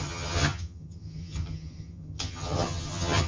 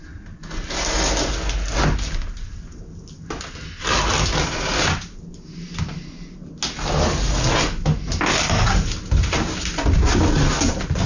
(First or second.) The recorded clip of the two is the second